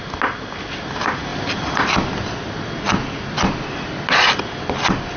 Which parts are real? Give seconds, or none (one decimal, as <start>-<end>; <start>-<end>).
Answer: 0.0-5.2